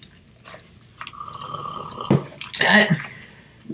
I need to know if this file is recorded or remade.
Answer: recorded